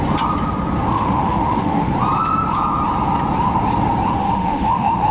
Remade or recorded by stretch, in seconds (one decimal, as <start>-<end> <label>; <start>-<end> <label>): 0.0-0.9 recorded; 0.9-1.9 remade; 1.9-4.2 recorded; 4.2-5.1 remade